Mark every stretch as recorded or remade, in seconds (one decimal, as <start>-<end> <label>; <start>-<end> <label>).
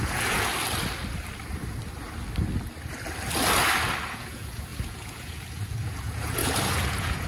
0.0-0.5 remade; 0.5-4.1 recorded; 4.1-7.3 remade